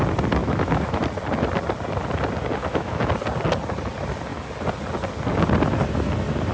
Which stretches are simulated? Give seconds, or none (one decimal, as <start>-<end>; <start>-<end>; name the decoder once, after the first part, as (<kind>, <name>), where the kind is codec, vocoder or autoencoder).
0.4-1.0 (autoencoder, DAC-VAE); 2.6-3.1